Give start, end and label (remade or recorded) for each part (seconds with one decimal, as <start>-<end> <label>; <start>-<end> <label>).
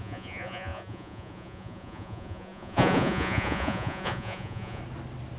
0.0-4.8 remade; 4.8-5.4 recorded